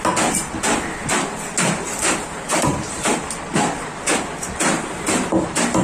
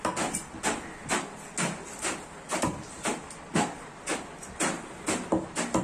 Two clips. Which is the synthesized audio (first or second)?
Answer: first